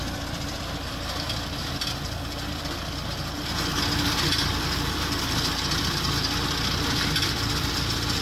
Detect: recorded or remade recorded